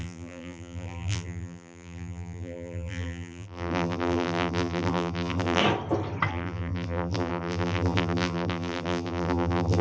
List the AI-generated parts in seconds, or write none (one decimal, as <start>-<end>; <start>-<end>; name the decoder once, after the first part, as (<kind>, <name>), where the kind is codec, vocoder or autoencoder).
0.0-5.6 (vocoder, BigVGAN v2); 6.3-9.8

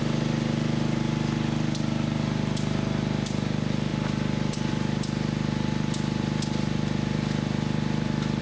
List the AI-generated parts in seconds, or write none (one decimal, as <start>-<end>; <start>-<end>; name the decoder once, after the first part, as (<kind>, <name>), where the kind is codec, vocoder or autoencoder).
none